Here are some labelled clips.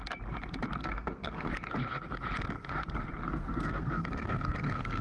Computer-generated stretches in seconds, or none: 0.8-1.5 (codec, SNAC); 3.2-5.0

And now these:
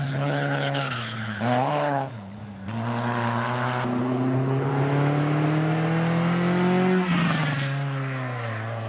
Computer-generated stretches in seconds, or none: 0.0-2.4 (codec, HILCodec); 4.0-4.7

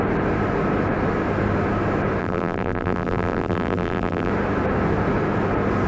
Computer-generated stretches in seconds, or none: 2.2-4.3 (vocoder, BigVGAN v2)

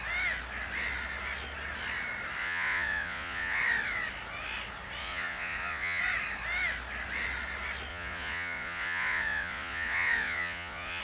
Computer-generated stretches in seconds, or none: 2.4-3.6 (vocoder, Vocos); 5.0-6.0; 7.9-11.0